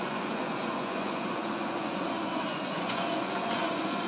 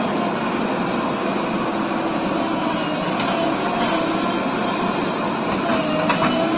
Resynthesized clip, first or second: first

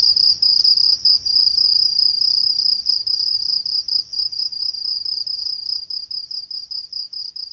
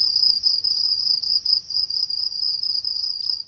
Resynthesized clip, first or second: second